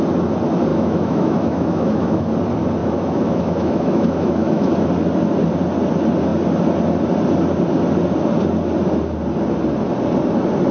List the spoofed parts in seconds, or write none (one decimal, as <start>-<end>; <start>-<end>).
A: 0.7-2.3; 2.8-4.7